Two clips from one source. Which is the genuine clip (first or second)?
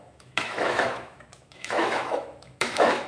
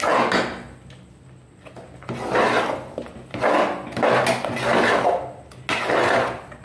second